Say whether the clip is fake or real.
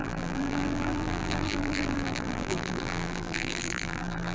fake